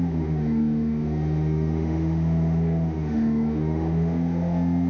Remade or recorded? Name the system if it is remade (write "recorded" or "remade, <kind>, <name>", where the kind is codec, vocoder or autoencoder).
remade, autoencoder, DAC-VAE